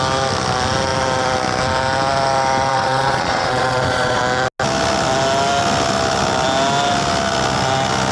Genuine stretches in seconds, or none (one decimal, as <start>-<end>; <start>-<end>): 0.0-2.7; 4.2-8.1